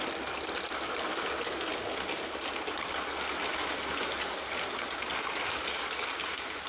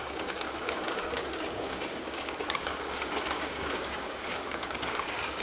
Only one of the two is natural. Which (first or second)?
first